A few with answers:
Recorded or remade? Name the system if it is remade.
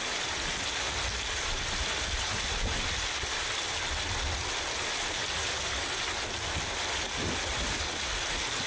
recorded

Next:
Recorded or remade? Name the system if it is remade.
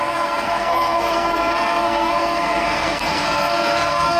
remade, codec, SNAC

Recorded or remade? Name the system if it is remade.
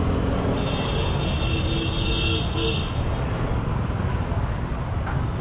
recorded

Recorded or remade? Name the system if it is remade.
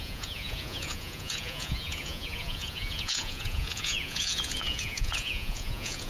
remade, vocoder, Vocos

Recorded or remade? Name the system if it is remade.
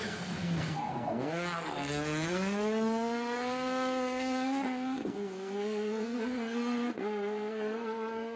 remade, codec, SNAC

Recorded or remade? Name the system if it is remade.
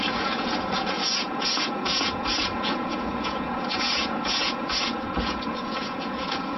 remade, vocoder, Vocos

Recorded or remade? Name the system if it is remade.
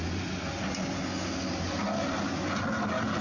recorded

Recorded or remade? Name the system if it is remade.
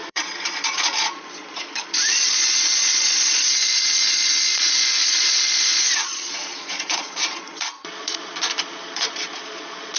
remade, vocoder, Vocos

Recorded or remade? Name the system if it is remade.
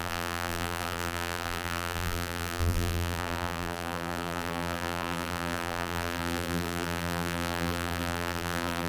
remade, vocoder, BigVGAN v2